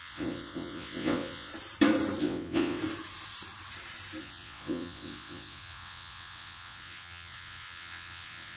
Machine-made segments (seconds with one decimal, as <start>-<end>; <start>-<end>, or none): 0.0-1.5; 2.2-2.8; 4.2-8.6